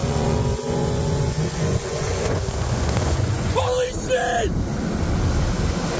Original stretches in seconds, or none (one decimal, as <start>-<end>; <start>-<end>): 3.6-6.0